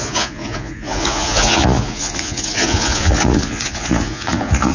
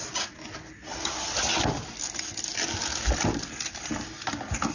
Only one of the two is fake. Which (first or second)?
first